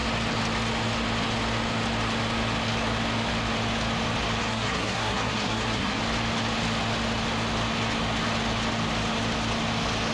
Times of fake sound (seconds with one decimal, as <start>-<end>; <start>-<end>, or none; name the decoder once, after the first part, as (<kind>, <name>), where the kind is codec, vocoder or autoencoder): 4.4-6.0 (codec, SNAC)

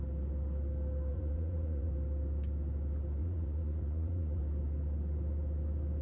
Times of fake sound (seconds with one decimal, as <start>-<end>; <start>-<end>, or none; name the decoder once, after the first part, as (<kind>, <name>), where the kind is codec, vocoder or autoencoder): 1.1-1.9 (vocoder, Vocos); 3.2-4.4